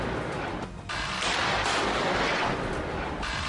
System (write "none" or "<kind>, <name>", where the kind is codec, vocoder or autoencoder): none